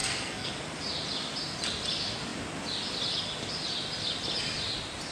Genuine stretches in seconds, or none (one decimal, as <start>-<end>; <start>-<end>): 0.5-5.1